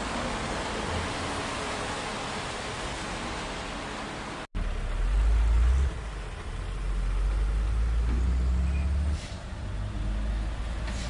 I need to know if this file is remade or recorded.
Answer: recorded